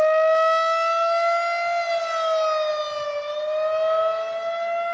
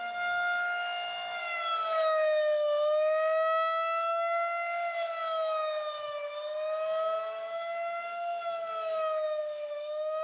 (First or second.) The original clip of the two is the first